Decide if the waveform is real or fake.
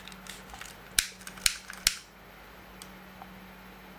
real